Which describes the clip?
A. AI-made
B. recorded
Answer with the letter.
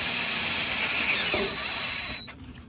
A